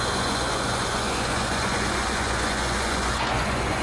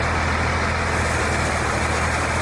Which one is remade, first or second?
first